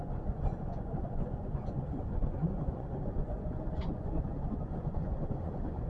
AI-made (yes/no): yes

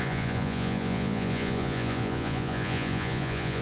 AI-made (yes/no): yes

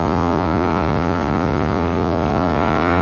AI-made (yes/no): yes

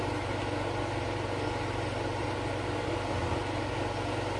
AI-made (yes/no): no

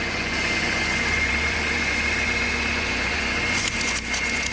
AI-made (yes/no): yes